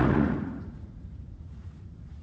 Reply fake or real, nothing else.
fake